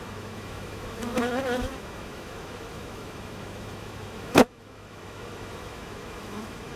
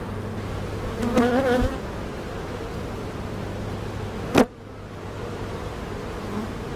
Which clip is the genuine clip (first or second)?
second